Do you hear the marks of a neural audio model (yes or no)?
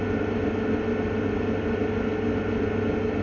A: no